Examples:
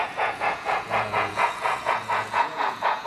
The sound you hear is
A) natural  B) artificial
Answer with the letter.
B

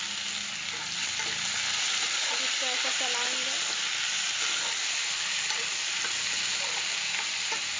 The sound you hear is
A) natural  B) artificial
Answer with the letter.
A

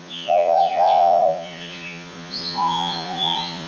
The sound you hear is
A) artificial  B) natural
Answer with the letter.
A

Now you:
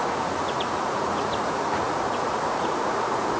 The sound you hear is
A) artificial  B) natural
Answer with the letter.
A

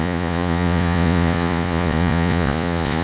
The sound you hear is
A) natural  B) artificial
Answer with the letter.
B